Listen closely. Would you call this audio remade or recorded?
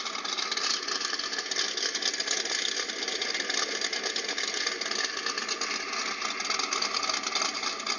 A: recorded